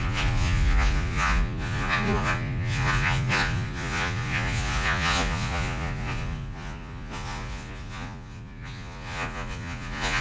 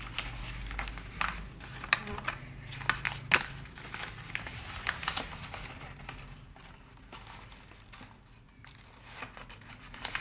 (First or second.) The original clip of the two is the second